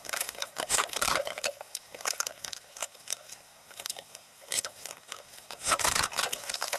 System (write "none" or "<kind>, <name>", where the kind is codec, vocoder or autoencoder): codec, SNAC